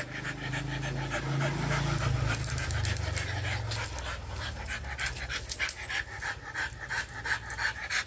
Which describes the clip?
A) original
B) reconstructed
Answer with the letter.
A